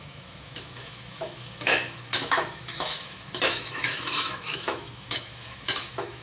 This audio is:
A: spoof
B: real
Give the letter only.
A